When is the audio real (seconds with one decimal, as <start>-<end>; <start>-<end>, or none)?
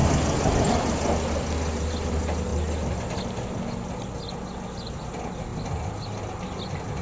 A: 0.0-7.0